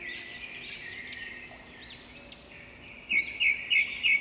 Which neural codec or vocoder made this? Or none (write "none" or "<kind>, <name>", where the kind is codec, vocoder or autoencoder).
vocoder, BigVGAN v2